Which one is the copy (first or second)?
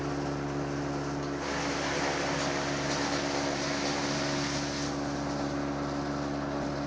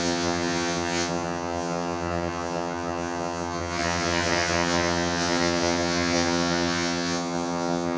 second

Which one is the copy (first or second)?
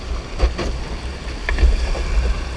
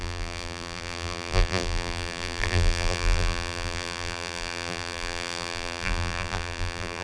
second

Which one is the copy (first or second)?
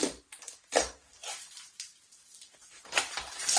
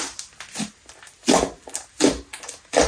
first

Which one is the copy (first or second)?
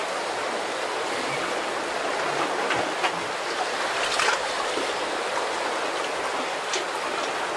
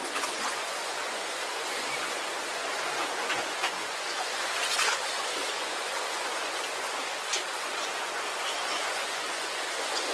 second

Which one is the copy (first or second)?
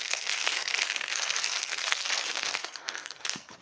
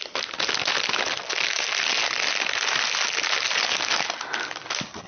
first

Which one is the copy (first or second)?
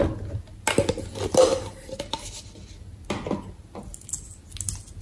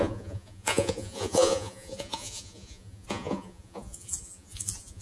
second